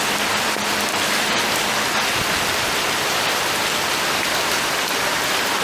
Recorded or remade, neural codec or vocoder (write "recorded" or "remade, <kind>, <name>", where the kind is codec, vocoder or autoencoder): recorded